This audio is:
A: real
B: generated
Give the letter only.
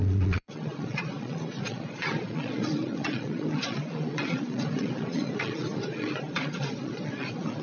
B